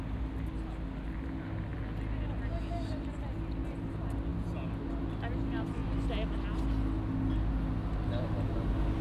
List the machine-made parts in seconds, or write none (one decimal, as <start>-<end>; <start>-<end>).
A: none

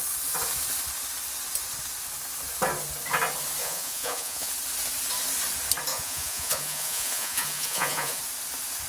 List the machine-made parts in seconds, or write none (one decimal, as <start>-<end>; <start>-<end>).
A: 3.6-4.5; 5.9-8.2

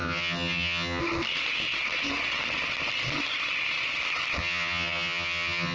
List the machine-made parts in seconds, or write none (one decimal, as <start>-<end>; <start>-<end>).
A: 0.0-1.0; 4.4-5.7

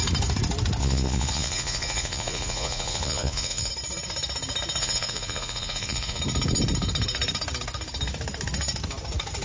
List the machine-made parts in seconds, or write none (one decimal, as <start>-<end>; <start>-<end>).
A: 0.8-3.7; 4.8-6.2

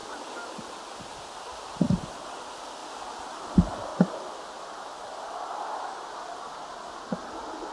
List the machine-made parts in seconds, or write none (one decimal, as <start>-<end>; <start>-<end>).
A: none

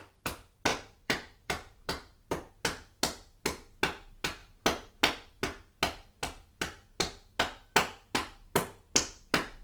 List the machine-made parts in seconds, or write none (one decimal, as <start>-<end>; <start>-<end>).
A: 0.7-2.5